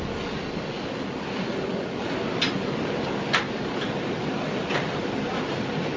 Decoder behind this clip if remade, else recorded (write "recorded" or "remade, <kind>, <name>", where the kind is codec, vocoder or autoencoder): recorded